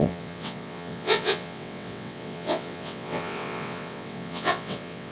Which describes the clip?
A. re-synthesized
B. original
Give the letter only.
A